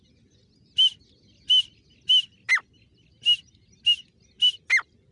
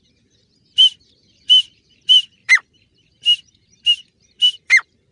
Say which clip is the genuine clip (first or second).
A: first